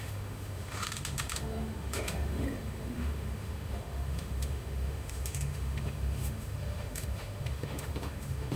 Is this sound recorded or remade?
remade